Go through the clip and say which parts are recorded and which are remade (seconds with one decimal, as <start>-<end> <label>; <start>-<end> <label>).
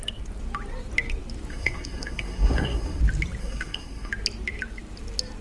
0.0-1.5 recorded; 1.5-3.0 remade; 3.0-3.4 recorded; 3.4-4.1 remade; 4.1-5.4 recorded